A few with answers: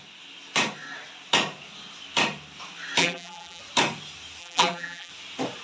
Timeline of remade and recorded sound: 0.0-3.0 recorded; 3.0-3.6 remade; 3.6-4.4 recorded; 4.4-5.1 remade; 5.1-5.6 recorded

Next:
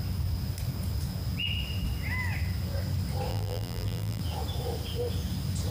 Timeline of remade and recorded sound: 0.0-3.3 recorded; 3.3-4.2 remade; 4.2-5.7 recorded